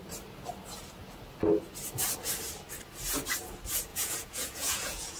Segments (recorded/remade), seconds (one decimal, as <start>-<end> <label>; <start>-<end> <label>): 0.0-3.9 recorded; 3.9-5.2 remade